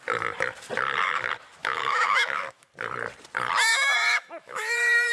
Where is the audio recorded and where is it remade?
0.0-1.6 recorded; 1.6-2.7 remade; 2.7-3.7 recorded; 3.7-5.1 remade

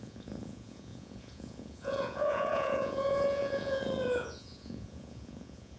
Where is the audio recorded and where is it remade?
0.0-5.8 remade

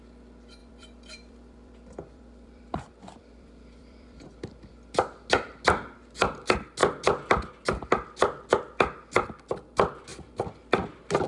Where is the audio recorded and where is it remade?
0.0-0.6 recorded; 0.6-5.3 remade; 5.3-11.3 recorded

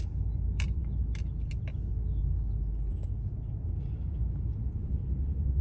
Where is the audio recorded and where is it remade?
0.0-0.8 remade; 0.8-3.8 recorded; 3.8-5.6 remade

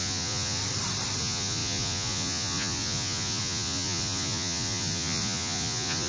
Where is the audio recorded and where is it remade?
0.0-0.6 remade; 0.6-1.2 recorded; 1.2-6.1 remade

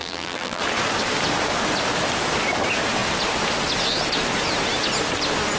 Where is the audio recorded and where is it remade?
0.0-0.6 remade; 0.6-5.6 recorded

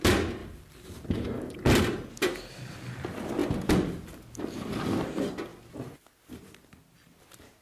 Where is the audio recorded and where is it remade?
0.0-0.4 recorded; 0.4-1.8 remade; 1.8-7.6 recorded

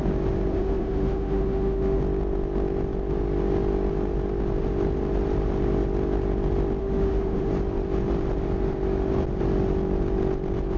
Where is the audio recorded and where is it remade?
0.0-0.5 recorded; 0.5-2.0 remade; 2.0-6.8 recorded; 6.8-7.5 remade; 7.5-10.8 recorded